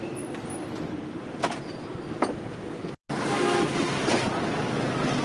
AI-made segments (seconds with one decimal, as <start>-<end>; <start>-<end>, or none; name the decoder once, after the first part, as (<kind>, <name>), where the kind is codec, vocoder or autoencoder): none